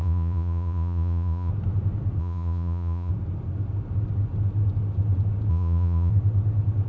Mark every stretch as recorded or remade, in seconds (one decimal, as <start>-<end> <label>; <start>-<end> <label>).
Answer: 0.0-1.5 remade; 1.5-2.2 recorded; 2.2-3.1 remade; 3.1-5.5 recorded; 5.5-6.1 remade; 6.1-6.9 recorded